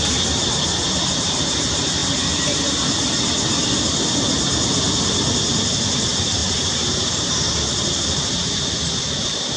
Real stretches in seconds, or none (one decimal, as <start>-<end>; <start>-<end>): 0.0-6.4; 7.8-9.6